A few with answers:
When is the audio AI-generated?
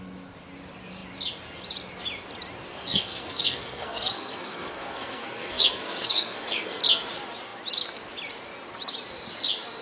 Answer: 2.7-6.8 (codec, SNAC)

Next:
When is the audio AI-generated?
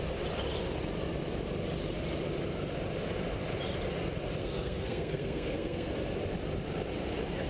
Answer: 4.4-5.9 (codec, SNAC)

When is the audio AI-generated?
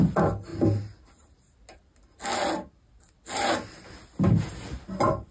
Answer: none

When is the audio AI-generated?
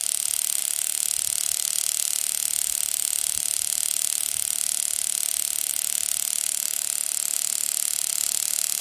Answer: none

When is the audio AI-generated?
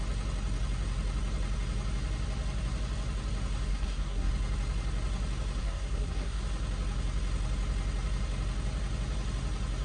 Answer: 3.7-4.3 (codec, SNAC); 5.6-6.4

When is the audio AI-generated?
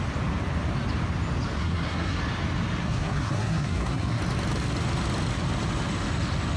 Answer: 1.6-2.2 (codec, SNAC); 2.8-4.2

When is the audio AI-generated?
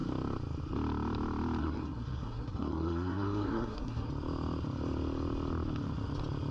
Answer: 1.6-4.1 (codec, SNAC)